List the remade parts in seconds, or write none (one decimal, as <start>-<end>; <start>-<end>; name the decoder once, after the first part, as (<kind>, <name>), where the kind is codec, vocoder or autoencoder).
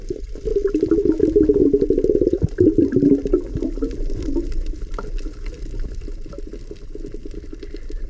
0.0-6.5 (vocoder, BigVGAN v2); 7.2-8.1